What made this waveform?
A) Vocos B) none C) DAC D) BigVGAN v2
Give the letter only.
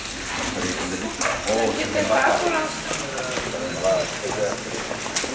B